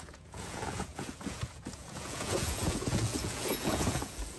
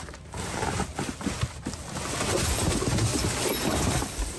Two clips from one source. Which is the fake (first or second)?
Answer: first